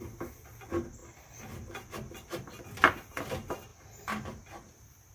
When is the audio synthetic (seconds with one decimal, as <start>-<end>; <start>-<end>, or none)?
1.0-3.2